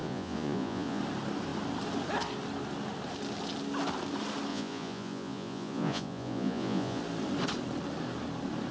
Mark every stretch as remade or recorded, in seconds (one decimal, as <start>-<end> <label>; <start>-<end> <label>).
0.0-1.0 remade; 1.0-4.5 recorded; 4.5-7.0 remade; 7.0-8.7 recorded

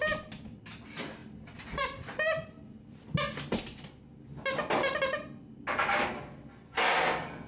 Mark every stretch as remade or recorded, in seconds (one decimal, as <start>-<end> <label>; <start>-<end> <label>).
0.0-7.5 recorded

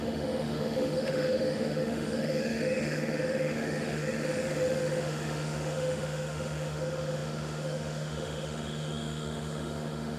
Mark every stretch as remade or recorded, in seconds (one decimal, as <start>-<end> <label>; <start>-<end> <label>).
0.0-10.2 remade

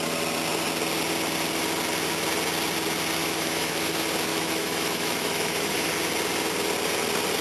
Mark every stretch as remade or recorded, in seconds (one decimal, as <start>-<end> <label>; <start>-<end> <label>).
0.0-3.2 recorded; 3.2-3.9 remade; 3.9-4.3 recorded; 4.3-5.9 remade; 5.9-7.4 recorded

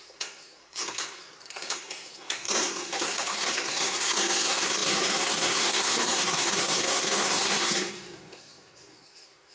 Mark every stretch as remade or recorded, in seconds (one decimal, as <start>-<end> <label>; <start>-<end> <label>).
0.0-9.5 remade

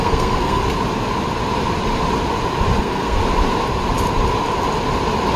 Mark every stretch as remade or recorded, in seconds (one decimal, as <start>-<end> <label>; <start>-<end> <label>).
0.0-0.6 remade; 0.6-2.8 recorded; 2.8-3.2 remade; 3.2-5.4 recorded

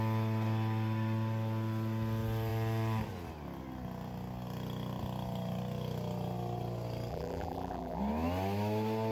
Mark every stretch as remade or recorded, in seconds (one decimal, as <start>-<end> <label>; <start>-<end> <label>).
0.0-7.1 recorded; 7.1-8.0 remade; 8.0-9.1 recorded

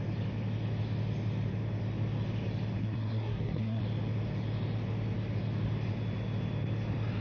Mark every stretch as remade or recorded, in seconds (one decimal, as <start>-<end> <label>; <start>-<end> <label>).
0.0-2.8 recorded; 2.8-3.8 remade; 3.8-7.2 recorded